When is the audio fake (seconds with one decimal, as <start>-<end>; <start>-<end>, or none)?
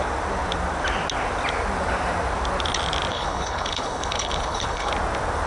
3.1-4.9